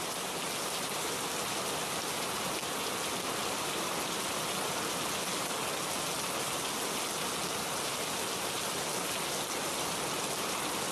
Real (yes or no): yes